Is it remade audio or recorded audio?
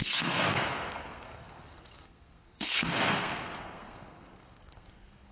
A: remade